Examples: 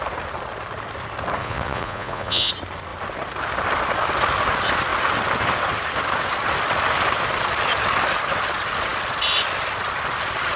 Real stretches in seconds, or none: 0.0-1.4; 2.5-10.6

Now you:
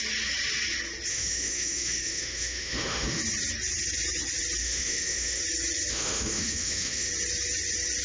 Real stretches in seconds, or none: 0.0-1.1; 3.2-4.6; 5.4-5.9; 7.1-8.0